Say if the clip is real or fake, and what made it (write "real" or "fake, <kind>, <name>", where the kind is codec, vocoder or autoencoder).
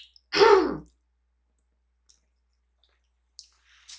real